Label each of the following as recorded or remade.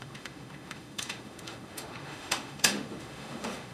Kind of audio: remade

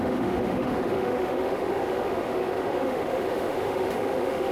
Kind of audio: remade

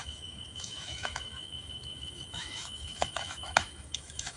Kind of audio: remade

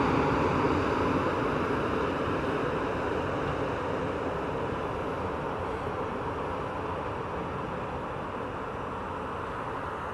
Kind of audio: recorded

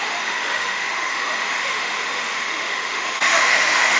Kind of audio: remade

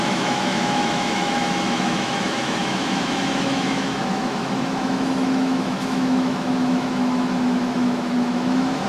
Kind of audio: remade